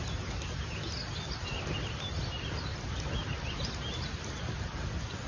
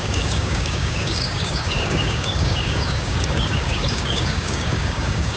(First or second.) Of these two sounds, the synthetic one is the second